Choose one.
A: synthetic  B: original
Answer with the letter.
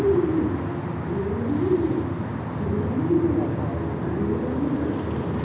B